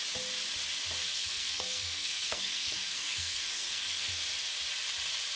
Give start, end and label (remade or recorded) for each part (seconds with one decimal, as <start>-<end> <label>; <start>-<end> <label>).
0.0-1.0 recorded; 1.0-4.1 remade; 4.1-5.4 recorded